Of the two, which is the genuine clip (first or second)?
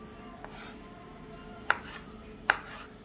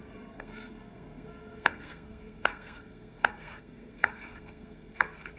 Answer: first